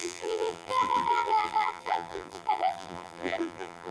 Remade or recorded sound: remade